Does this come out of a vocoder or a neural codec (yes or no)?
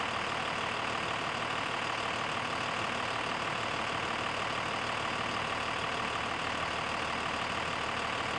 no